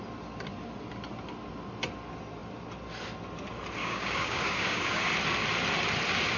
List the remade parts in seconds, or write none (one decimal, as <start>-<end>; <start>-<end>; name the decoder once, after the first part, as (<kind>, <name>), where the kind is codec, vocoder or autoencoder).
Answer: 3.8-5.0 (codec, DAC)